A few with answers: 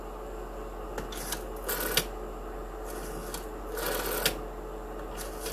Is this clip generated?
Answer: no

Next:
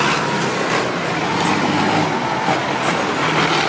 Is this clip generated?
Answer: no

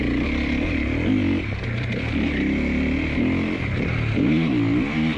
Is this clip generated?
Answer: no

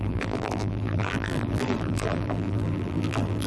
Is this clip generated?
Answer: yes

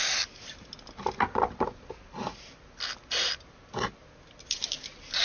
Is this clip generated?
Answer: no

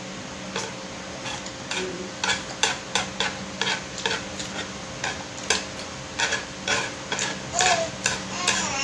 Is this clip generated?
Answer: yes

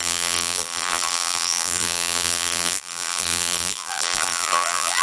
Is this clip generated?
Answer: yes